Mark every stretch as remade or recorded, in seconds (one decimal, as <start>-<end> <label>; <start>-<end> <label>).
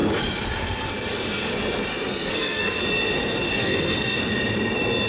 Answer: 0.0-1.9 recorded; 1.9-2.8 remade; 2.8-3.5 recorded; 3.5-4.2 remade; 4.2-5.1 recorded